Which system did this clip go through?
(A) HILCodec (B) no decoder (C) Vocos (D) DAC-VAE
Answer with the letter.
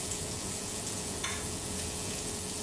C